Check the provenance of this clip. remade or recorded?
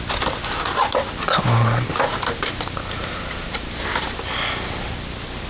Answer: recorded